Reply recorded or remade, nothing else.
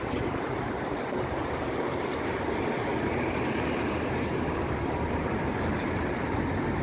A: remade